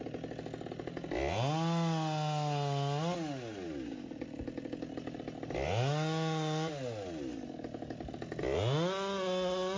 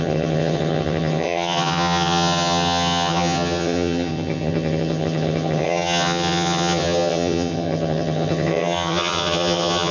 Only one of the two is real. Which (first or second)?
first